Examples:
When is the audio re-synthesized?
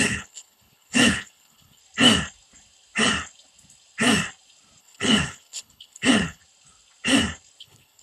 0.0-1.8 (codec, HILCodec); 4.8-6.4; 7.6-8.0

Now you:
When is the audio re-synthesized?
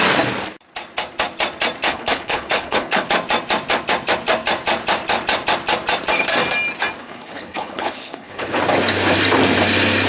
1.9-3.1 (codec, HILCodec); 7.0-8.6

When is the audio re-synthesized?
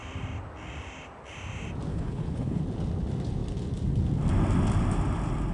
1.9-2.6 (codec, HILCodec)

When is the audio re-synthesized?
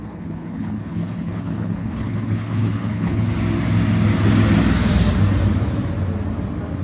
0.0-3.3 (codec, HILCodec)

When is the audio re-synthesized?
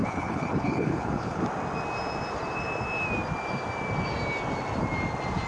0.0-1.4 (codec, HILCodec)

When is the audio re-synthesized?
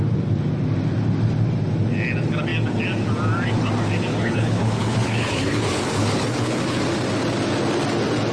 4.1-6.8 (codec, HILCodec)